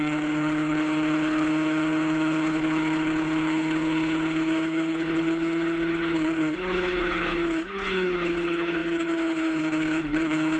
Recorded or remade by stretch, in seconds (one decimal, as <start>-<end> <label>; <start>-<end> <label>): 0.0-10.6 remade